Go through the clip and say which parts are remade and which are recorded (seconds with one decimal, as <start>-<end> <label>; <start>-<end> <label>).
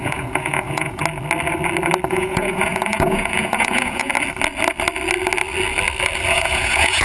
0.0-1.0 remade; 1.0-2.1 recorded; 2.1-4.1 remade; 4.1-6.3 recorded; 6.3-7.0 remade